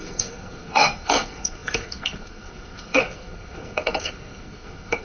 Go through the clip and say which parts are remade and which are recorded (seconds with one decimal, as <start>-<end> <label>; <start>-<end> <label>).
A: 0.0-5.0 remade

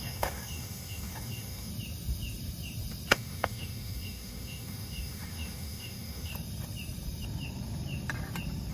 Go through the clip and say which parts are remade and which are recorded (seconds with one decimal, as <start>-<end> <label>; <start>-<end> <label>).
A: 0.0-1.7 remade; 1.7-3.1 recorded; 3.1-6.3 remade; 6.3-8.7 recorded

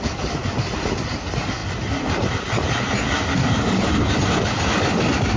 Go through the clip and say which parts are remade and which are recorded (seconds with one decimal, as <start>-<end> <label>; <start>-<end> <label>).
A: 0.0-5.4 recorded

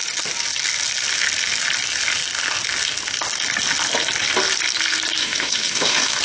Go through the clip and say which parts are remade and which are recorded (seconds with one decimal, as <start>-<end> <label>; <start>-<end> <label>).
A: 0.0-5.2 recorded; 5.2-6.2 remade

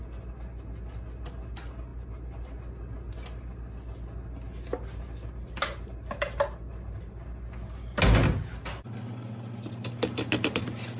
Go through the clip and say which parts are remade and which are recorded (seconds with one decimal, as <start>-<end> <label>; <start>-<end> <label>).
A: 0.0-11.0 recorded

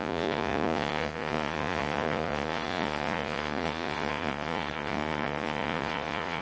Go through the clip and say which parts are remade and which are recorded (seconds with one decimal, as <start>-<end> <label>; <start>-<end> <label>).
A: 0.0-6.4 remade

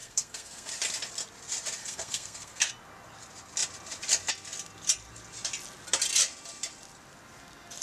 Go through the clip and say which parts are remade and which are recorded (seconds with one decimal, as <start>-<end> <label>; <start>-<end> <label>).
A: 0.0-0.7 remade; 0.7-1.8 recorded; 1.8-2.7 remade; 2.7-7.8 recorded